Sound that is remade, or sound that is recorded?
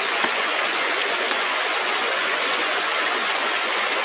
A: remade